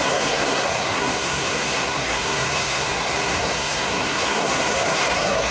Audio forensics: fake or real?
fake